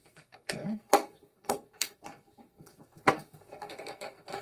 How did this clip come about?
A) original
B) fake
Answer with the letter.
B